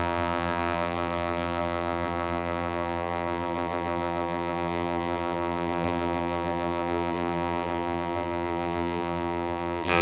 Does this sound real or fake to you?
fake